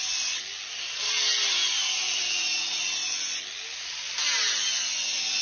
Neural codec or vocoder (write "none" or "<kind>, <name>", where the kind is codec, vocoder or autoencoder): none